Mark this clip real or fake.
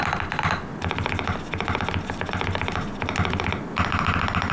real